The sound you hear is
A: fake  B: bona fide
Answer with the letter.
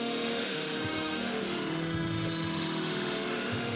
A